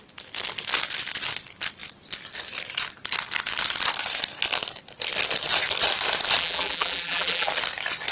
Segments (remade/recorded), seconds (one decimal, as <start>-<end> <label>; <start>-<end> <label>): 0.0-6.4 recorded; 6.4-7.5 remade; 7.5-8.1 recorded

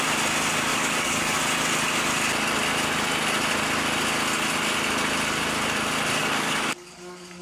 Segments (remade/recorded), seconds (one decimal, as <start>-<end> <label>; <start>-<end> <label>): 0.0-0.7 recorded; 0.7-1.4 remade; 1.4-6.2 recorded; 6.2-7.4 remade

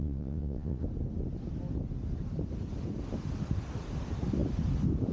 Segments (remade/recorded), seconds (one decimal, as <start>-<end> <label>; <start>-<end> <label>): 0.0-0.8 remade; 0.8-5.1 recorded

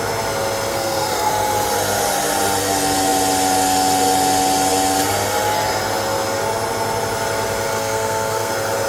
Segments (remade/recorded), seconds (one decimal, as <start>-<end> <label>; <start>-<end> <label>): 0.0-0.7 recorded; 0.7-1.3 remade; 1.3-7.7 recorded; 7.7-8.5 remade; 8.5-8.9 recorded

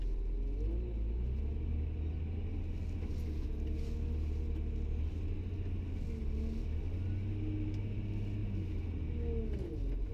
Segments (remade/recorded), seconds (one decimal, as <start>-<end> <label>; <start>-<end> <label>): 0.0-10.1 recorded

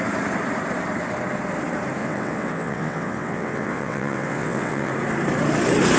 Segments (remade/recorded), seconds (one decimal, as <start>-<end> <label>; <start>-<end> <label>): 0.0-2.0 recorded; 2.0-4.9 remade; 4.9-6.0 recorded

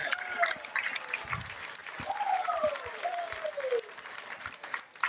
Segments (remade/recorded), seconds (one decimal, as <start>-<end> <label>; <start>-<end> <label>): 0.0-5.1 recorded

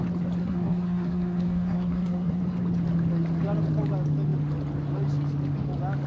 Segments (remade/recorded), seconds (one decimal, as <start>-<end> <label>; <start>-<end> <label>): 0.0-0.4 recorded; 0.4-2.4 remade; 2.4-6.1 recorded